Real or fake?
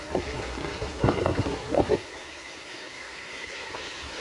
fake